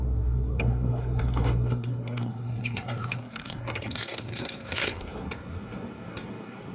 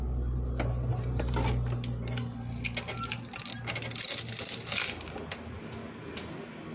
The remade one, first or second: first